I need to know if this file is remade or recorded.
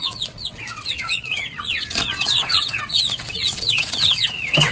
remade